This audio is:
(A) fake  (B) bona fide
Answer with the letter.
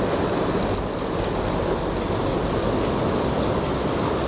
B